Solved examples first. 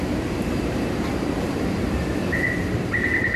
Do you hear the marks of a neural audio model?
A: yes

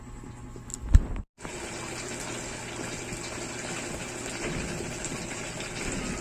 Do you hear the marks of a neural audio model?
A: no